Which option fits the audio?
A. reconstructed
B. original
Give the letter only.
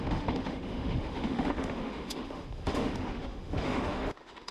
A